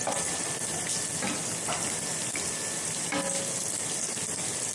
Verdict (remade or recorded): recorded